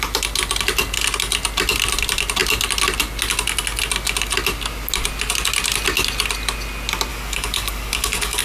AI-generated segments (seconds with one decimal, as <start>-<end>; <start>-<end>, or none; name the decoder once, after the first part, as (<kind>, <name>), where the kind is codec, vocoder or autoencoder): 7.1-8.4 (codec, DAC)